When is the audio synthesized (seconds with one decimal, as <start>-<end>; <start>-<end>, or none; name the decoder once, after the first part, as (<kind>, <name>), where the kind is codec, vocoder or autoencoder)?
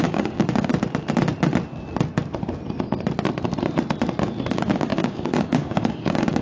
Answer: 0.0-0.7 (codec, DAC); 4.5-6.4